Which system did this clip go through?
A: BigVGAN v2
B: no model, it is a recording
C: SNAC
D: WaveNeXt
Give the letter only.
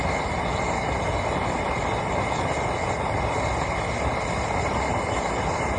B